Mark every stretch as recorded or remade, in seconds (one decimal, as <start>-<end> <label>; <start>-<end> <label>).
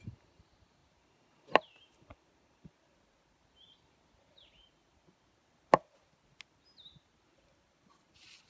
0.0-8.5 recorded